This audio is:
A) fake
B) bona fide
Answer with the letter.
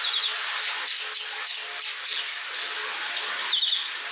B